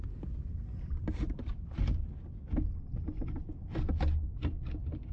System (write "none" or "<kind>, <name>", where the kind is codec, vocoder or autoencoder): none